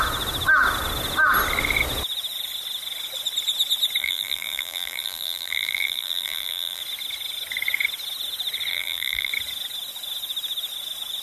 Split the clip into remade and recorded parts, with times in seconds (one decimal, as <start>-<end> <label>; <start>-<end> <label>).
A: 0.0-4.0 recorded; 4.0-6.8 remade; 6.8-8.7 recorded; 8.7-9.3 remade; 9.3-11.2 recorded